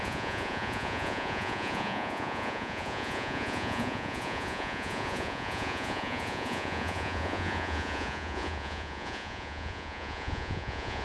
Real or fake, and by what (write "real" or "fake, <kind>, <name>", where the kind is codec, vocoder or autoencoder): fake, vocoder, Vocos